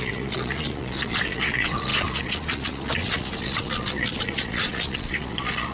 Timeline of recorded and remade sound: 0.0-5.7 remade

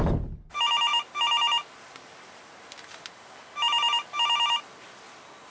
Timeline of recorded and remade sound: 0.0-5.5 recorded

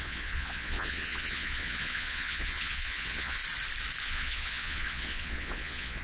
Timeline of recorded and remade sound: 0.0-3.4 remade; 3.4-4.0 recorded; 4.0-6.0 remade

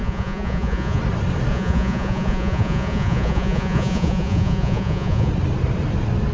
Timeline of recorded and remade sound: 0.0-1.0 remade; 1.0-1.5 recorded; 1.5-5.3 remade; 5.3-6.3 recorded

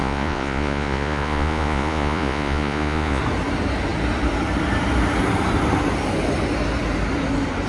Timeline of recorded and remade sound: 0.0-3.2 remade; 3.2-7.7 recorded

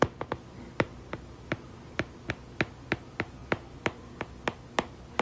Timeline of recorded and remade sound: 0.0-5.2 recorded